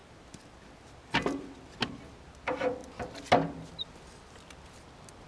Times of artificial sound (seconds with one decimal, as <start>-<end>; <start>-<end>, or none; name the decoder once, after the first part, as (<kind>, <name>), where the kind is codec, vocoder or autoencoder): none